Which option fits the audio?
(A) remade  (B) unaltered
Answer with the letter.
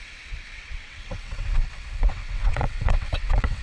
A